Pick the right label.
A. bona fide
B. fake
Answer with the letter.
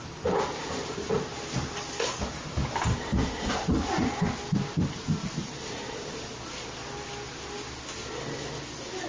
A